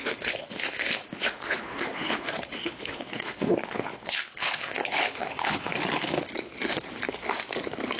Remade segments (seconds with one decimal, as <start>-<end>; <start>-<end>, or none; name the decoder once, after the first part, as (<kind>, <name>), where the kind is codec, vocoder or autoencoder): 0.0-5.7 (codec, HILCodec)